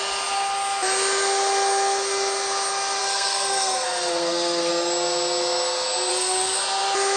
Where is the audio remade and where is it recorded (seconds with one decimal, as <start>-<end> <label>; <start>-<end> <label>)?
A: 0.0-3.0 recorded; 3.0-4.7 remade; 4.7-6.1 recorded; 6.1-6.6 remade; 6.6-7.2 recorded